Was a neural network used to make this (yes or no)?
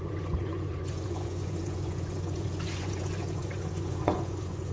yes